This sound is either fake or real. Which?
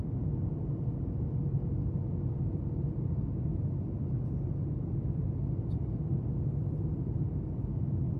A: real